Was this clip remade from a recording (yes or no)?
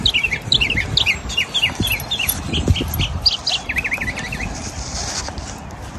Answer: no